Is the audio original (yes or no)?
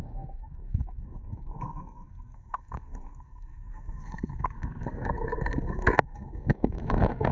no